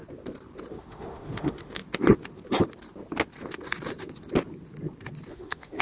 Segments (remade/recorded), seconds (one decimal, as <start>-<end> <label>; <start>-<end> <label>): 0.0-0.7 recorded; 0.7-1.8 remade; 1.8-5.3 recorded; 5.3-5.8 remade

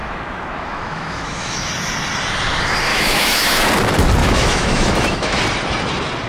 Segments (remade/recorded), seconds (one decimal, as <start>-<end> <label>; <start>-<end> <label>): 0.0-1.7 remade; 1.7-2.9 recorded; 2.9-3.6 remade; 3.6-4.2 recorded; 4.2-5.4 remade; 5.4-6.3 recorded

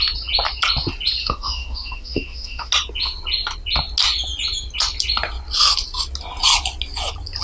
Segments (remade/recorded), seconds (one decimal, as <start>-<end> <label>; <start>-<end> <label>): 0.0-1.2 recorded; 1.2-2.7 remade; 2.7-7.4 recorded

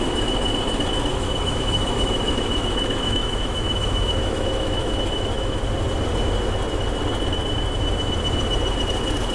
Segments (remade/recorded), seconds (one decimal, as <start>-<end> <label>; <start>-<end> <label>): 0.0-1.1 recorded; 1.1-5.6 remade; 5.6-9.3 recorded

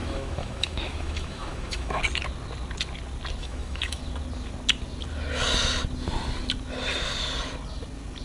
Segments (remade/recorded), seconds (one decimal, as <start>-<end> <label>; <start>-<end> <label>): 0.0-2.0 remade; 2.0-3.4 recorded; 3.4-4.0 remade; 4.0-8.2 recorded

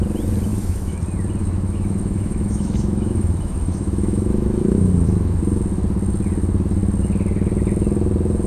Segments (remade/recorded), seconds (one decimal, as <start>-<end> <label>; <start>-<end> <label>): 0.0-0.5 recorded; 0.5-1.0 remade; 1.0-1.4 recorded; 1.4-5.4 remade; 5.4-8.5 recorded

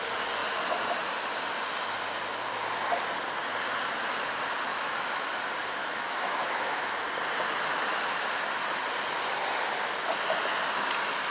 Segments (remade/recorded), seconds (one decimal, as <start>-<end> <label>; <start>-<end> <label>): 0.0-4.7 recorded; 4.7-5.3 remade; 5.3-5.8 recorded; 5.8-7.1 remade; 7.1-11.3 recorded